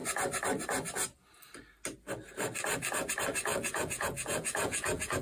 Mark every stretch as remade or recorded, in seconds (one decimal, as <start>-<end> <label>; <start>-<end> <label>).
0.0-3.5 recorded; 3.5-5.2 remade